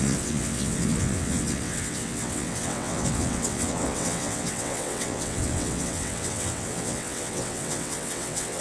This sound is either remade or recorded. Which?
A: remade